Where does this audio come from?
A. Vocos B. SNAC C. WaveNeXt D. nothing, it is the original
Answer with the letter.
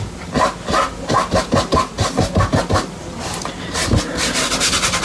D